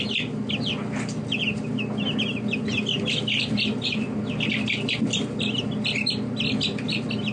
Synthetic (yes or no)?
no